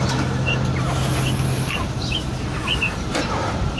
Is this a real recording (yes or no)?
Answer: yes